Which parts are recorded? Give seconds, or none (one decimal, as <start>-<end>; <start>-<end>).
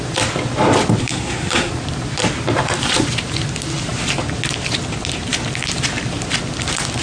0.0-1.0; 1.7-7.0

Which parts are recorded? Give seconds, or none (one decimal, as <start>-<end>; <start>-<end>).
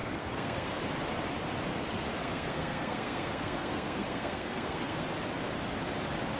0.8-2.2; 5.0-6.4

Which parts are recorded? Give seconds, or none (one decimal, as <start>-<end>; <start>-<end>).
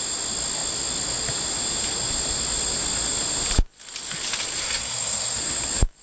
0.0-4.6; 5.4-6.0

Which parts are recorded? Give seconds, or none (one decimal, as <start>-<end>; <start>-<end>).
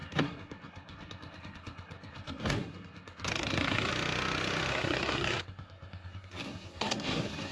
3.9-4.7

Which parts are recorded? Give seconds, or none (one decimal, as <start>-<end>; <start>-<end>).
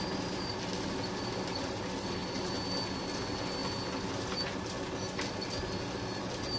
0.0-6.6